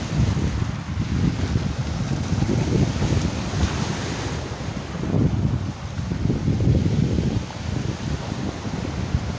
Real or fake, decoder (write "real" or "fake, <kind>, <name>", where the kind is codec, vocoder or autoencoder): real